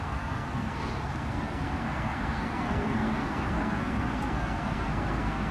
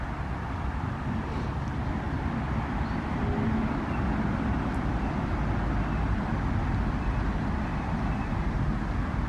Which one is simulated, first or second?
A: first